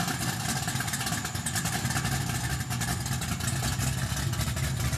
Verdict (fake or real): real